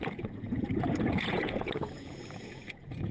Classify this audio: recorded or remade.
remade